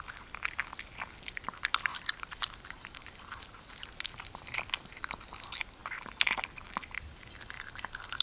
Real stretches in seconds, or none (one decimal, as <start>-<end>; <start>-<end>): 0.0-1.9; 5.1-8.2